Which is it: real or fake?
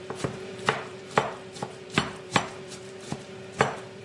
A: fake